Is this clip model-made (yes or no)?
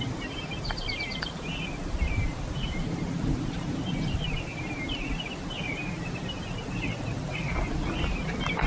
no